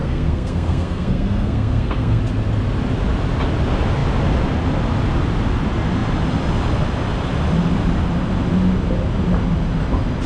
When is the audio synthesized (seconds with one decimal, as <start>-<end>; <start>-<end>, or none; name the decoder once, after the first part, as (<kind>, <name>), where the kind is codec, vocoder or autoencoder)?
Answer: 0.0-2.2 (codec, SNAC)